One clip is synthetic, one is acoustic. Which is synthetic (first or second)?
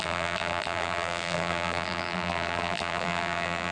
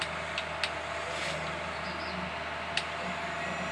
first